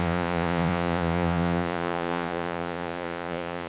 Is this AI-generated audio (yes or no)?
yes